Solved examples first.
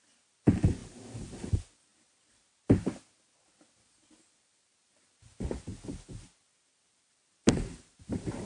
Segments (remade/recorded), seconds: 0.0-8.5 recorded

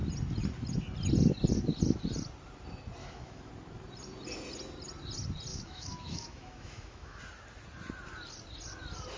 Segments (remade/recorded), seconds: 0.0-3.0 recorded; 3.0-3.5 remade; 3.5-5.5 recorded; 5.5-7.2 remade; 7.2-9.2 recorded

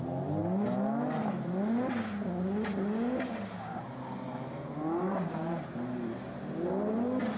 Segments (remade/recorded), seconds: 0.0-7.4 recorded

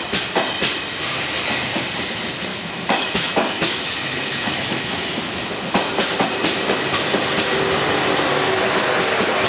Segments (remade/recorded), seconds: 0.0-2.5 recorded; 2.5-5.4 remade; 5.4-9.5 recorded

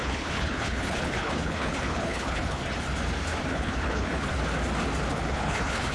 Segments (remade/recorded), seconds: 0.0-2.6 remade; 2.6-3.5 recorded; 3.5-4.3 remade; 4.3-5.1 recorded; 5.1-5.9 remade

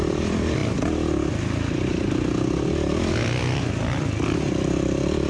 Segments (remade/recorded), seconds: 0.0-0.6 remade; 0.6-3.8 recorded; 3.8-5.3 remade

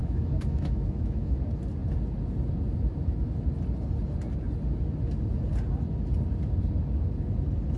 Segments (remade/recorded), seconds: 0.0-1.4 remade; 1.4-7.8 recorded